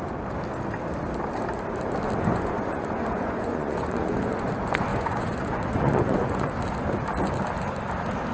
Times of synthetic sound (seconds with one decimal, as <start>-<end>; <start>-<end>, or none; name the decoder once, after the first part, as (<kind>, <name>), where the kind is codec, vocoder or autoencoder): 2.3-4.5 (vocoder, Vocos); 4.9-6.5